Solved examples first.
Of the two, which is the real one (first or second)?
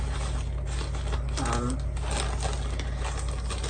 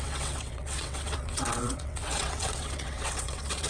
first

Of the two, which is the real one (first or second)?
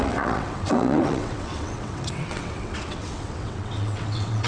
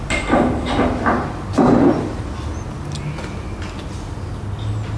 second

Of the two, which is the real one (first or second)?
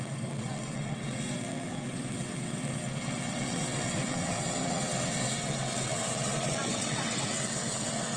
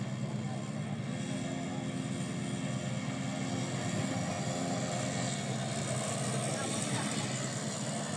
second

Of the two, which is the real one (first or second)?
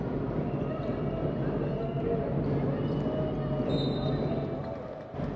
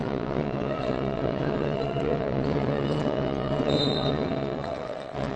first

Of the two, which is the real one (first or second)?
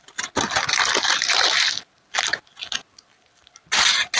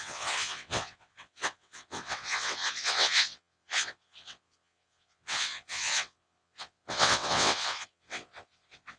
first